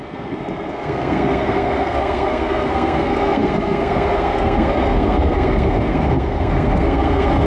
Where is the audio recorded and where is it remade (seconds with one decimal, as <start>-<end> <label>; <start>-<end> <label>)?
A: 0.0-7.5 remade